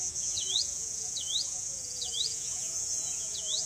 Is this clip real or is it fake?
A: fake